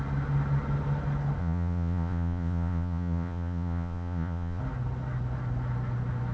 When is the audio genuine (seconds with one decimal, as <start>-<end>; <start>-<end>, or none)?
0.0-1.4; 4.6-6.3